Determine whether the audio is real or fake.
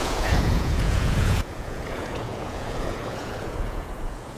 fake